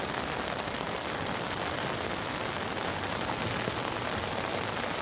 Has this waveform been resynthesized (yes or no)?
no